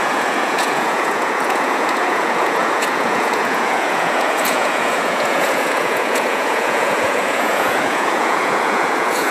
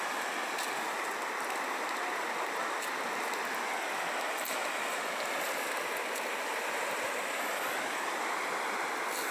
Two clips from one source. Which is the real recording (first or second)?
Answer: second